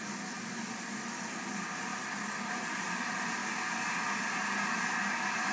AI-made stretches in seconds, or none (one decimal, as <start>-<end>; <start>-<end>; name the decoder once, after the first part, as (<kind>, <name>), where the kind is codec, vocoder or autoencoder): none